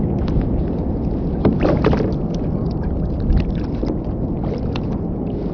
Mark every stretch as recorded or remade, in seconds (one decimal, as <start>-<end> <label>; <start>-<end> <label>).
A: 0.0-5.5 recorded

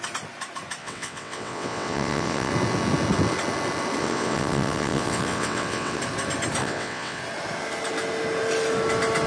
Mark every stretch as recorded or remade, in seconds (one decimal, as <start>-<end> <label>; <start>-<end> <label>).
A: 0.0-0.8 recorded; 0.8-2.5 remade; 2.5-4.0 recorded; 4.0-6.0 remade; 6.0-6.6 recorded; 6.6-7.2 remade; 7.2-9.3 recorded

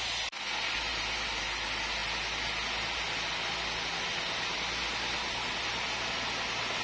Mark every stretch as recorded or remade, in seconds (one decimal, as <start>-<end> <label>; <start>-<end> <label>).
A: 0.0-6.8 recorded

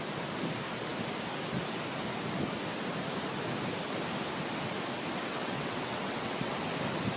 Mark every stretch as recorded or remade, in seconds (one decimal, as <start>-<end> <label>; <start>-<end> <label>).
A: 0.0-5.2 recorded; 5.2-6.5 remade; 6.5-7.2 recorded

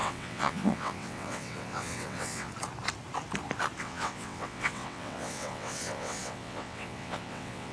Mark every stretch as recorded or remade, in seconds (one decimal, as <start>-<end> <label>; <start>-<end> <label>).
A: 0.0-2.5 remade; 2.5-3.8 recorded; 3.8-7.7 remade

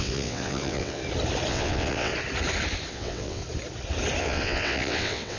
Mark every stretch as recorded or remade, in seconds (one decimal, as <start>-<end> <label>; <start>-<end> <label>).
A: 0.0-1.0 remade; 1.0-1.5 recorded; 1.5-2.1 remade; 2.1-2.9 recorded; 2.9-3.4 remade; 3.4-4.2 recorded; 4.2-5.4 remade

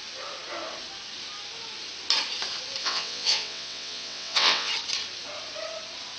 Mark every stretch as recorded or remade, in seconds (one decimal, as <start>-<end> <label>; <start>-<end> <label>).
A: 0.0-2.8 recorded; 2.8-4.7 remade; 4.7-6.2 recorded

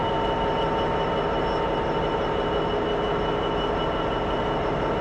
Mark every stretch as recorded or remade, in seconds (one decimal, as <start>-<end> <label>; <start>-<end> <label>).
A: 0.0-5.0 recorded